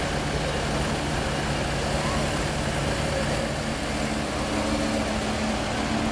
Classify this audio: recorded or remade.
recorded